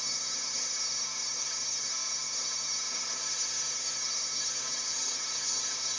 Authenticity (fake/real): fake